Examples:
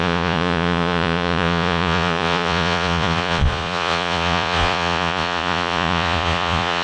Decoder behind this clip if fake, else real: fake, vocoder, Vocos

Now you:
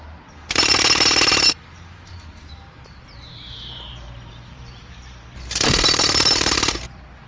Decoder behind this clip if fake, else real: fake, vocoder, BigVGAN v2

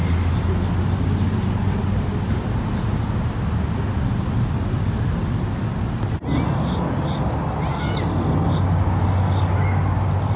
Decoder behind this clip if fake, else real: real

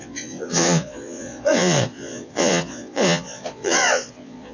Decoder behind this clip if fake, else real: fake, vocoder, Vocos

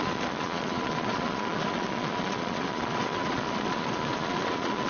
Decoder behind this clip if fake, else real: fake, vocoder, Vocos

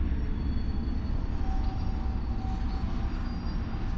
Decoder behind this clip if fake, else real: real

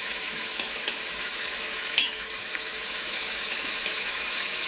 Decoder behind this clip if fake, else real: fake, autoencoder, DAC-VAE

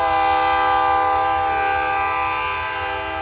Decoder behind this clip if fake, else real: real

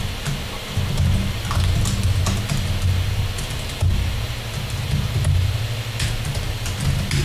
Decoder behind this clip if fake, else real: real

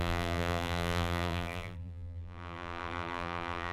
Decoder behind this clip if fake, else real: fake, vocoder, BigVGAN v2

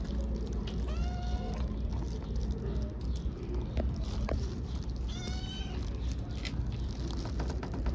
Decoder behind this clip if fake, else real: real